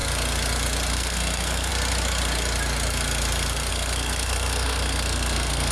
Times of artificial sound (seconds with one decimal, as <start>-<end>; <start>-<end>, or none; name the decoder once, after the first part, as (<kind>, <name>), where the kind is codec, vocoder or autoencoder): 0.9-1.7 (codec, SNAC); 3.7-5.7